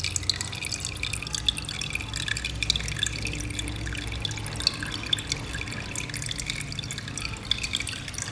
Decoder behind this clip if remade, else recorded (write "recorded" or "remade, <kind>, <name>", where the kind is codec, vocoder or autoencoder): recorded